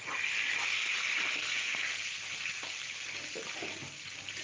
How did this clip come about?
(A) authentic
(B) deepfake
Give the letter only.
A